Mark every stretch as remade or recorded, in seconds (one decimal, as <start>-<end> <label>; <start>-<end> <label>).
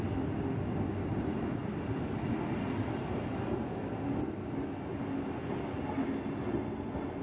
0.0-7.2 recorded